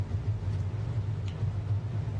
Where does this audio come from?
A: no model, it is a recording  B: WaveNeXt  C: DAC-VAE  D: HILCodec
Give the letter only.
A